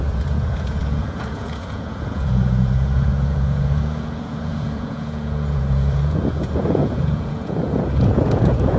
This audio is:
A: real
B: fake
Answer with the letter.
B